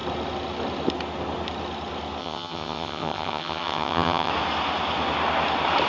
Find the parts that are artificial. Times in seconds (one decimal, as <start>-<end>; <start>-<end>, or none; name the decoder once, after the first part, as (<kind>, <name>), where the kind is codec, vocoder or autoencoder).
2.2-4.3 (vocoder, HiFi-GAN)